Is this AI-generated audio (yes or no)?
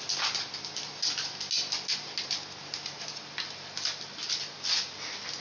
no